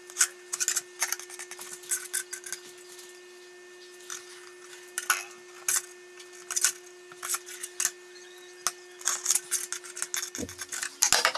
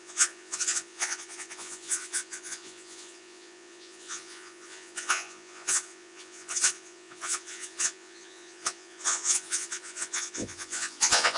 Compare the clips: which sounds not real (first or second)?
second